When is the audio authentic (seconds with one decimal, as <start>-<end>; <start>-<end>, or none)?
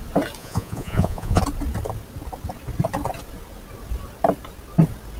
0.0-0.4; 1.4-5.2